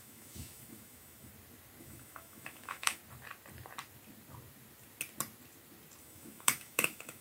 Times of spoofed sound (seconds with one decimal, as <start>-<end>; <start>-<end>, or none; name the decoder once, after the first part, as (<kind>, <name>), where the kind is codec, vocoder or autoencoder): 0.0-1.3 (autoencoder, DAC-VAE); 1.8-3.0; 6.0-7.2